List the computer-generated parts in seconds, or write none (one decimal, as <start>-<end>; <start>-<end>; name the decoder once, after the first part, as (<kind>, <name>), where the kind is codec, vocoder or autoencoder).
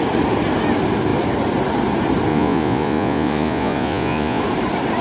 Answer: 2.3-4.4 (vocoder, Vocos)